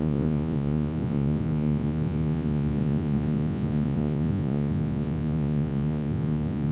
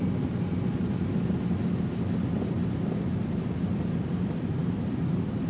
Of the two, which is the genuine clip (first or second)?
second